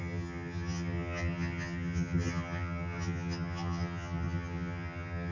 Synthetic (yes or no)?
yes